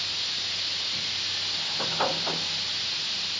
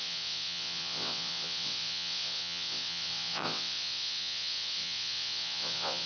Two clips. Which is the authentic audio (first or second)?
first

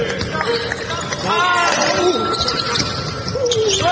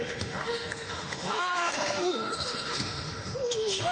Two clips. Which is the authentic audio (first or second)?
first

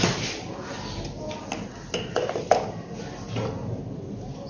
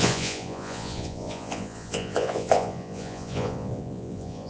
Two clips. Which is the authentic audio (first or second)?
first